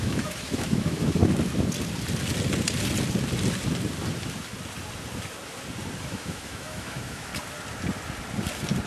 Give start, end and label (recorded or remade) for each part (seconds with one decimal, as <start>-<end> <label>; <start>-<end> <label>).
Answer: 0.0-1.2 remade; 1.2-6.0 recorded; 6.0-7.3 remade; 7.3-8.9 recorded